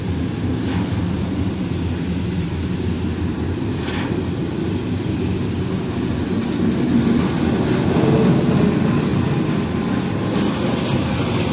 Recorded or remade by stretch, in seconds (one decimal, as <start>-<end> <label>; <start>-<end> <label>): 0.0-11.5 recorded